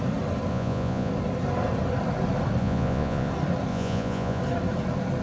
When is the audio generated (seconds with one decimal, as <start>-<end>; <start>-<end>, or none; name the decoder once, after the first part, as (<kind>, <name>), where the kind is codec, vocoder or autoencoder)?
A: 0.5-1.1 (vocoder, Vocos); 2.6-3.3; 3.7-4.4